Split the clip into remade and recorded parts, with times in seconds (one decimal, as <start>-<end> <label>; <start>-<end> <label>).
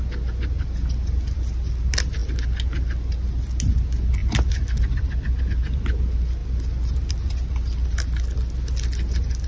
0.0-9.5 recorded